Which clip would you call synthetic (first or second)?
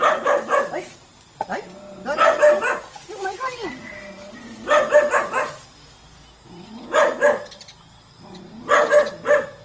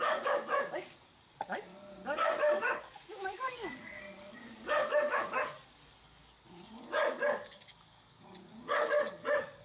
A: second